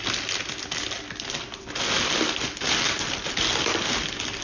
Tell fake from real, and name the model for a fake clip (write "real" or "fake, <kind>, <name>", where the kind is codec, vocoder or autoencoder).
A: real